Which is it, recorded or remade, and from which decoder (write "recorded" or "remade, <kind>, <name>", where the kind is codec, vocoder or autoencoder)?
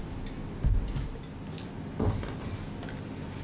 recorded